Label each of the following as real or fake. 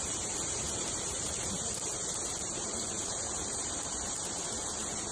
fake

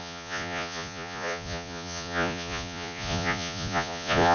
fake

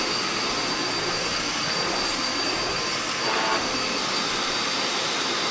real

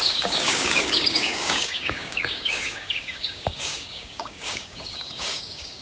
fake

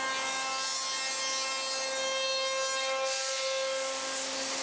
real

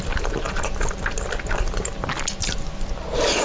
real